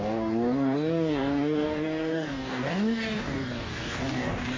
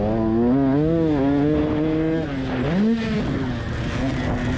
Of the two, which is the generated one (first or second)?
first